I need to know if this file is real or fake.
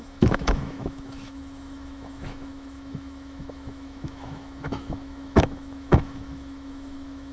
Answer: fake